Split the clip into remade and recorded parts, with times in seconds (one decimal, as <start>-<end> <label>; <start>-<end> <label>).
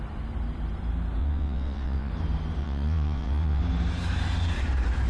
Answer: 0.0-1.2 recorded; 1.2-2.1 remade; 2.1-2.6 recorded; 2.6-3.6 remade; 3.6-5.1 recorded